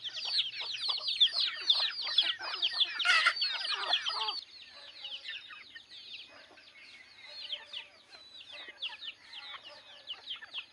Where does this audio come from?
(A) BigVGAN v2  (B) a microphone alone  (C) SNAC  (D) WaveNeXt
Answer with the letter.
B